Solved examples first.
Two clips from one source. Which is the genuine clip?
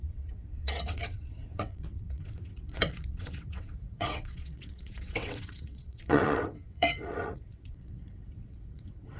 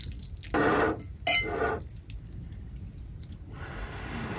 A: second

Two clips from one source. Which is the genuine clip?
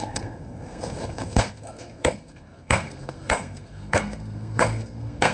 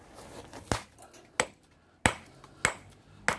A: second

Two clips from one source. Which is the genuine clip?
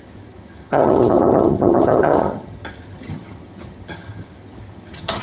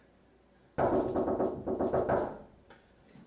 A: second